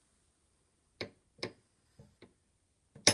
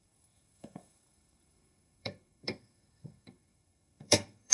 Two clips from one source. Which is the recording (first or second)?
first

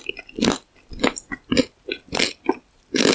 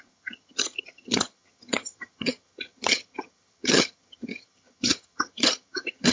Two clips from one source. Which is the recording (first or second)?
first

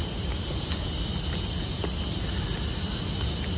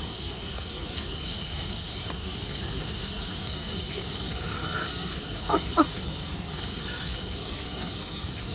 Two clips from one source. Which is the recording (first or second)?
first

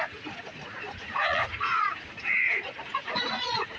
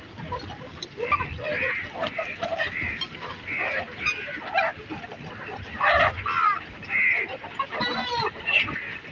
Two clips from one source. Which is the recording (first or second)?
second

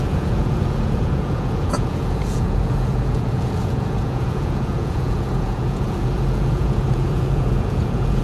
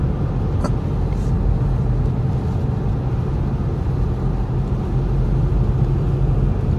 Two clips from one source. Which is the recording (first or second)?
second